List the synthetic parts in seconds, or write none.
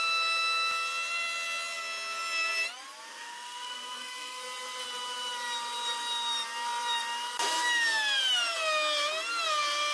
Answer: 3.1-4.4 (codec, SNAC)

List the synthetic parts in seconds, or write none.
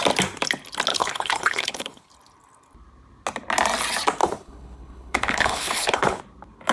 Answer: 0.9-2.1 (codec, HILCodec); 4.2-6.2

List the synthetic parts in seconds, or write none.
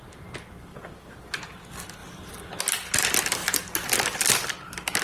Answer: none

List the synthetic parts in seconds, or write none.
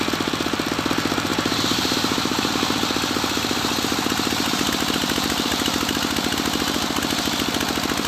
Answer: 1.3-2.5 (vocoder, BigVGAN v2)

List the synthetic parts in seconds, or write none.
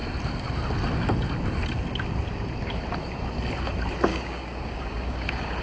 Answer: 4.1-5.6 (codec, DAC)